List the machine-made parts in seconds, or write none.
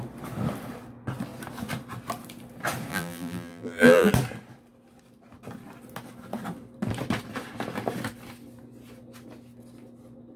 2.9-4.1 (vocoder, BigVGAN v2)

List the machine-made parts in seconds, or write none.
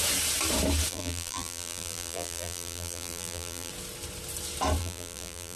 0.9-3.7 (vocoder, BigVGAN v2); 4.8-5.6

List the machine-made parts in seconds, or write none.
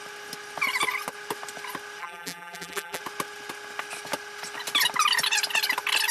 2.0-3.0 (vocoder, BigVGAN v2)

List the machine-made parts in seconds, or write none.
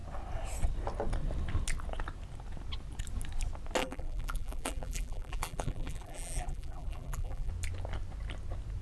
3.8-7.5 (vocoder, BigVGAN v2)